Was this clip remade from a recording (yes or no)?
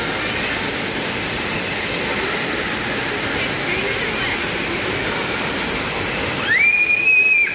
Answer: no